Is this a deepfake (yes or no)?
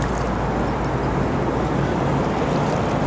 no